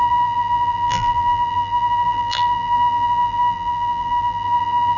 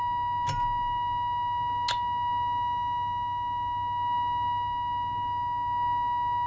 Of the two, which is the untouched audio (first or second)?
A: second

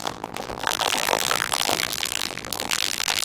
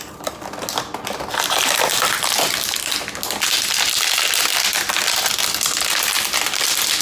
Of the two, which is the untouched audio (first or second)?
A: second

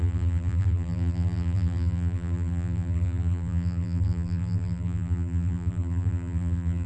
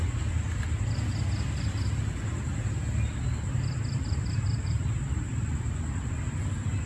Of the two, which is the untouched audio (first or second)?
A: second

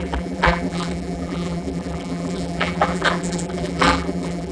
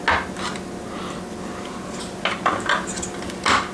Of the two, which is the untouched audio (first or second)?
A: second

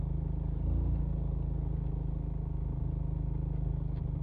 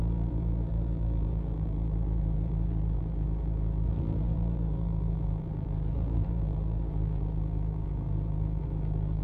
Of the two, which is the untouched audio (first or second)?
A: first